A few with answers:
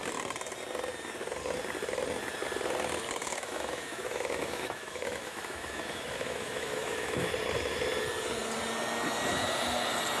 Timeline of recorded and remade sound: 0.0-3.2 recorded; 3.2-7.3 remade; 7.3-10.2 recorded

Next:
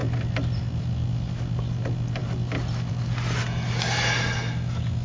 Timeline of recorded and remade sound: 0.0-5.0 recorded

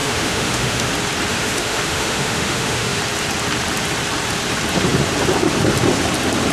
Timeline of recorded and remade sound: 0.0-0.9 remade; 0.9-1.3 recorded; 1.3-3.0 remade; 3.0-6.5 recorded

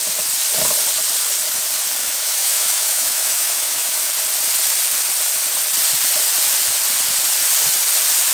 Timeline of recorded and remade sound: 0.0-2.0 recorded; 2.0-4.1 remade; 4.1-8.3 recorded

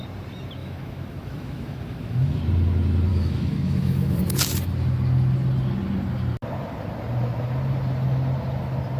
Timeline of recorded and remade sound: 0.0-0.6 recorded; 0.6-2.4 remade; 2.4-3.1 recorded; 3.1-4.2 remade; 4.2-9.0 recorded

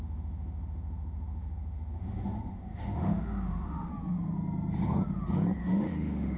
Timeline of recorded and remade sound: 0.0-3.9 remade; 3.9-5.6 recorded; 5.6-6.4 remade

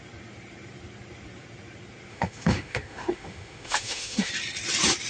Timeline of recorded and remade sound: 0.0-2.1 recorded; 2.1-4.3 remade; 4.3-5.1 recorded

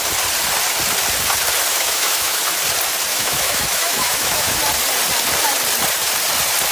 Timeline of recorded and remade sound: 0.0-1.7 recorded; 1.7-2.4 remade; 2.4-3.1 recorded; 3.1-4.6 remade; 4.6-6.7 recorded